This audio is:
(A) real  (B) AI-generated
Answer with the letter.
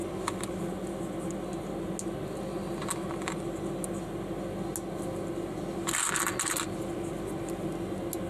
A